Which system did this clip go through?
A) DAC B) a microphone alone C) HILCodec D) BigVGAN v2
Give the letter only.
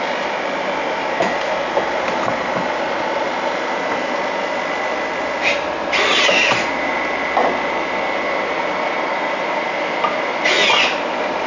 B